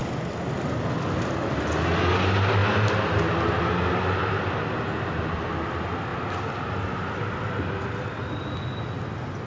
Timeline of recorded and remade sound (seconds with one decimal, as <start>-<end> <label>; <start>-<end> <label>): 0.0-9.5 recorded